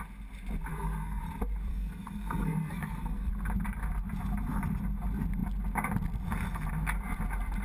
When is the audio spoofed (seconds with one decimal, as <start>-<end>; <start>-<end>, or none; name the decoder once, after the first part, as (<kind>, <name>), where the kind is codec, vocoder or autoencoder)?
0.7-1.2 (codec, SNAC); 1.7-3.3